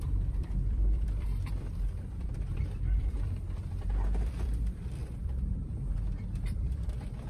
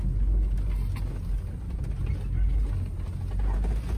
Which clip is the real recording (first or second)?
second